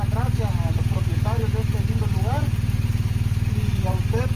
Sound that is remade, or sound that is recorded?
recorded